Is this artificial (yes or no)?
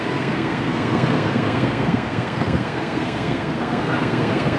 yes